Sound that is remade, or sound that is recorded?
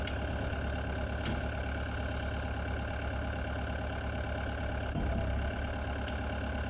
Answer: recorded